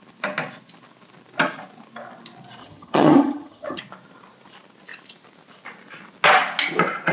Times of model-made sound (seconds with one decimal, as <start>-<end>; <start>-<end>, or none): 2.6-3.8